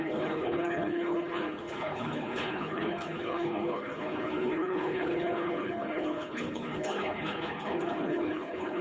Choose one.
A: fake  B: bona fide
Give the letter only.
A